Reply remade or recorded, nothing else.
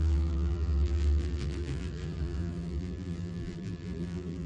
remade